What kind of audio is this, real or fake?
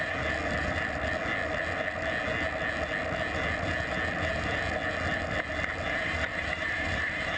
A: real